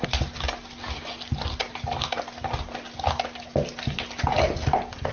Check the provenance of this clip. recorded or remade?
recorded